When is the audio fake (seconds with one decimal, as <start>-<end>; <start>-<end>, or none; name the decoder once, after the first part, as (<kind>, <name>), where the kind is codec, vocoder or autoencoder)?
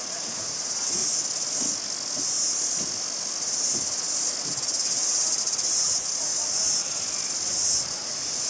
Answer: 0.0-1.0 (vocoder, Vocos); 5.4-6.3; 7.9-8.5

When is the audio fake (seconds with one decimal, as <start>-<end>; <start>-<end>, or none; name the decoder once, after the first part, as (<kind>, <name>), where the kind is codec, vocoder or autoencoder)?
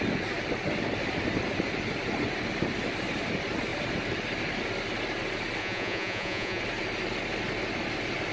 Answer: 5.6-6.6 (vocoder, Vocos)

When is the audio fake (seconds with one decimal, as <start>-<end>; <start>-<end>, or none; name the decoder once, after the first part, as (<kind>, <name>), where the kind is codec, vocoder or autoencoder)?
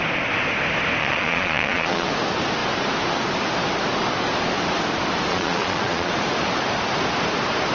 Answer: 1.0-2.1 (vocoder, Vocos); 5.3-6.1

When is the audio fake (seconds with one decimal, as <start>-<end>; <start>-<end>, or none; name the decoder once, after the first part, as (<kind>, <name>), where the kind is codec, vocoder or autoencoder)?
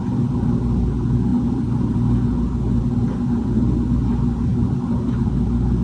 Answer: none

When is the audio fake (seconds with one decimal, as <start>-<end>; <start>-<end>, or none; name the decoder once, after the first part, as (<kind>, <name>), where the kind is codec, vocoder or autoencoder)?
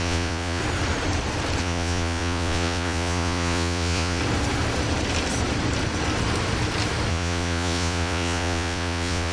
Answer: 0.0-0.6 (vocoder, Vocos); 1.6-4.2; 7.1-9.3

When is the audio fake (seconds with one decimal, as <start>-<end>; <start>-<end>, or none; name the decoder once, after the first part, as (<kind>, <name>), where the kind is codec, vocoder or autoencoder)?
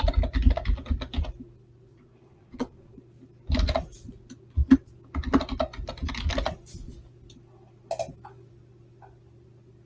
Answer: 1.9-3.1 (vocoder, Vocos)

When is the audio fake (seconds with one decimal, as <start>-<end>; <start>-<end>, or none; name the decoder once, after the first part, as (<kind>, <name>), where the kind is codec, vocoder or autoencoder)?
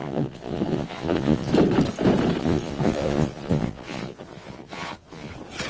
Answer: 0.0-1.5 (vocoder, Vocos); 2.4-5.3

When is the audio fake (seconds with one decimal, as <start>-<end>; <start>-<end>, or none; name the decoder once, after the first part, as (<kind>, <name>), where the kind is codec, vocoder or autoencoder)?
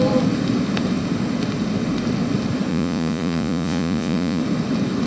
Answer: 2.7-4.4 (vocoder, Vocos)